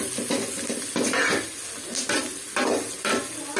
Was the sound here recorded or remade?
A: recorded